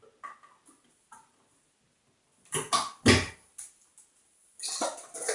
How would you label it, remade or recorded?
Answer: recorded